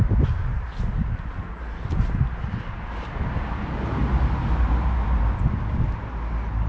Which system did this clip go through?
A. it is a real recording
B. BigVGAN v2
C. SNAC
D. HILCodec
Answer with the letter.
A